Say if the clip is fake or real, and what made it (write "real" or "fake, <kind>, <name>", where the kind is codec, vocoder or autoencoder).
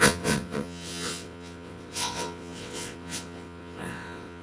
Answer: fake, vocoder, WaveNeXt